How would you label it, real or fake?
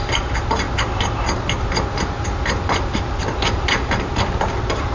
real